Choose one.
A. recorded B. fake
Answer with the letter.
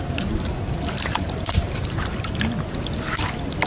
B